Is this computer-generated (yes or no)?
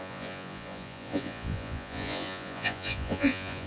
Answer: yes